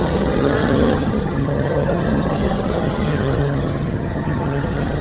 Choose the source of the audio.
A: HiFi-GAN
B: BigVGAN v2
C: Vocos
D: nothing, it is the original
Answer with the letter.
A